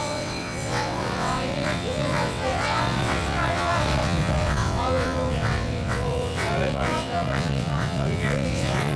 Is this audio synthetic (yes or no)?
yes